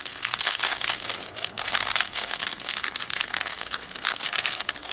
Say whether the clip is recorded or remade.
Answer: remade